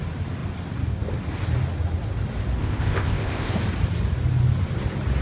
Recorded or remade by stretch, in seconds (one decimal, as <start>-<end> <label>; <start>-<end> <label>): 0.0-2.6 recorded; 2.6-3.5 remade; 3.5-5.2 recorded